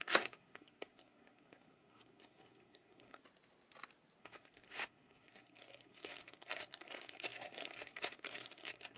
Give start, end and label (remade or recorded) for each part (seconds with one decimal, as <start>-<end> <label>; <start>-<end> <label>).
0.0-3.2 remade; 3.2-4.2 recorded; 4.2-9.0 remade